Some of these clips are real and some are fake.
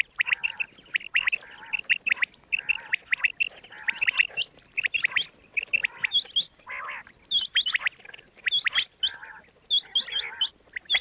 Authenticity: real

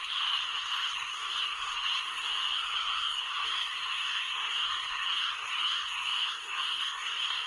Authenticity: fake